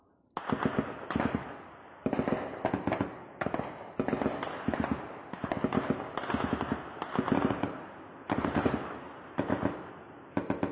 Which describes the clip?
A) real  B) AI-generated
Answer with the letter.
A